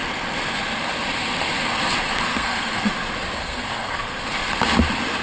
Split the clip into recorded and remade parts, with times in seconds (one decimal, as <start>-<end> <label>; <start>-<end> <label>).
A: 0.0-2.3 recorded; 2.3-2.9 remade; 2.9-3.4 recorded; 3.4-4.1 remade; 4.1-5.2 recorded